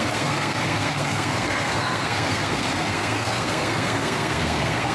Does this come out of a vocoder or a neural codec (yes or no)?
yes